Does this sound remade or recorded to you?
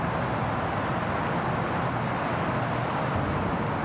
recorded